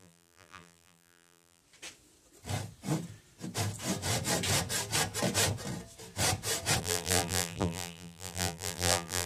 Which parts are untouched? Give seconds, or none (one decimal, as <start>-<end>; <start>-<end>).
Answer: 1.6-6.8